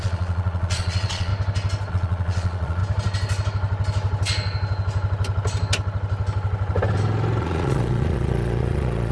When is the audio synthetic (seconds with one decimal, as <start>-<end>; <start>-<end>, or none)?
0.0-1.3; 1.9-2.8; 7.4-9.1